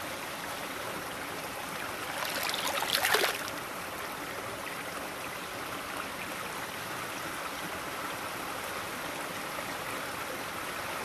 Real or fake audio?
real